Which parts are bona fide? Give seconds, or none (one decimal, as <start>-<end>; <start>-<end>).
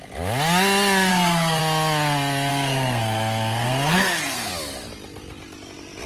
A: 0.0-1.1; 1.6-2.5; 4.5-6.1